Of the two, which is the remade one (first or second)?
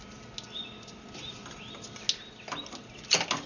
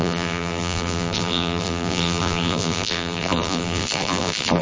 second